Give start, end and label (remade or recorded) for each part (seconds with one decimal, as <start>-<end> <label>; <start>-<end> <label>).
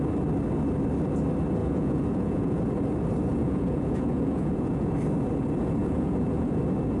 0.0-1.6 recorded; 1.6-2.6 remade; 2.6-3.3 recorded; 3.3-4.9 remade; 4.9-5.8 recorded; 5.8-6.6 remade; 6.6-7.0 recorded